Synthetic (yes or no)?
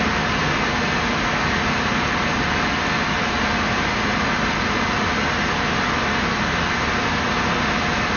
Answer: no